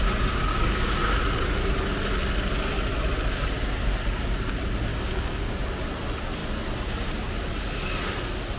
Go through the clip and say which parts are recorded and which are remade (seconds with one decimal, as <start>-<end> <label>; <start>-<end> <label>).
0.0-0.5 recorded; 0.5-1.2 remade; 1.2-4.9 recorded; 4.9-5.6 remade; 5.6-8.6 recorded